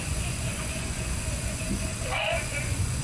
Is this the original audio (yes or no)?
no